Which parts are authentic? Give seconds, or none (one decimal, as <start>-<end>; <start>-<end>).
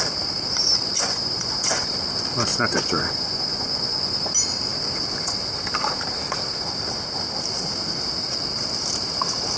0.0-0.9; 1.9-2.5; 4.3-9.6